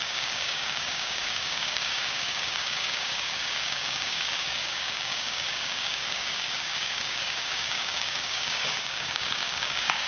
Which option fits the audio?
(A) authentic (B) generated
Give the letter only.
B